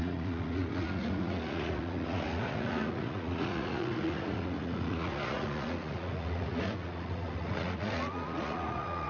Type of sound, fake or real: fake